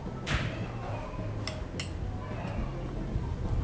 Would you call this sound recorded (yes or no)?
yes